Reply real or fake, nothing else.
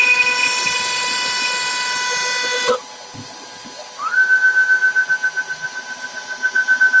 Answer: real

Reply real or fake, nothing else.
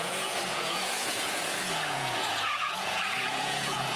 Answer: fake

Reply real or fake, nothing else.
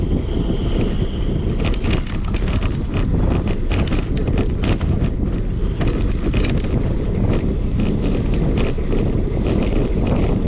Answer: real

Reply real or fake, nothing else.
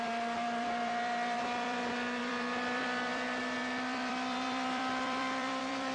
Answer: fake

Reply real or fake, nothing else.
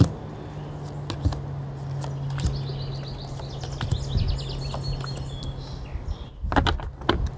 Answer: real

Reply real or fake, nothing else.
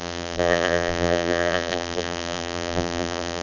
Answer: fake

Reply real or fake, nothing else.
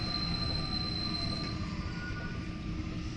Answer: real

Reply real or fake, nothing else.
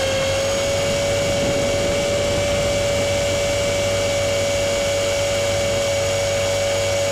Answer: real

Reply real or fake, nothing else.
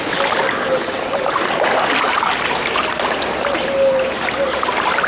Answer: real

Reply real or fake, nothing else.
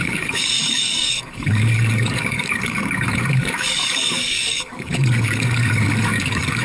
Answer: fake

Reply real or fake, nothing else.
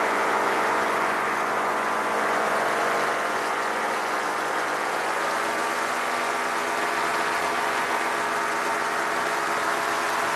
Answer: fake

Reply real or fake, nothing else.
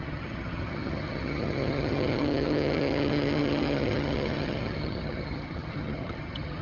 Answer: fake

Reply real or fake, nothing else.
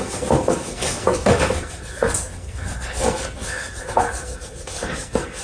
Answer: fake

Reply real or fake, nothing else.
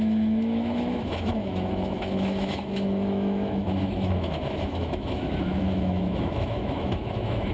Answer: fake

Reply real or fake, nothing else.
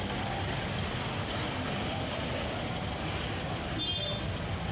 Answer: real